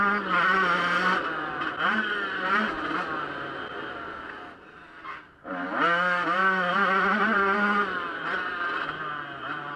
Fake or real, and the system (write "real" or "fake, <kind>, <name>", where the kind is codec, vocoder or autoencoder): real